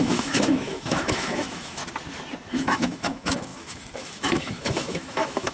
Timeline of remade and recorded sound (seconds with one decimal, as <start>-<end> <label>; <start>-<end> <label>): 0.0-1.8 remade; 1.8-2.5 recorded; 2.5-5.5 remade